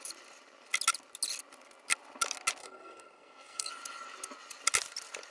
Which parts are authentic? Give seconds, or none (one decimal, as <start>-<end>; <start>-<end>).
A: 0.0-2.6; 3.7-5.3